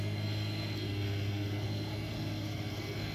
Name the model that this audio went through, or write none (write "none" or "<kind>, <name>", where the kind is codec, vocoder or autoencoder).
codec, SNAC